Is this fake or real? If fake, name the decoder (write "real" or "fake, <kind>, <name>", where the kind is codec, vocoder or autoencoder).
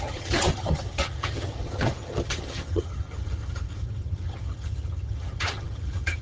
fake, vocoder, HiFi-GAN